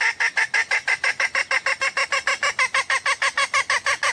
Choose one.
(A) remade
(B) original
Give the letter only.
B